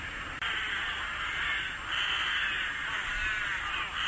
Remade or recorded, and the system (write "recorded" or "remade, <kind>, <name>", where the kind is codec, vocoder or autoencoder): recorded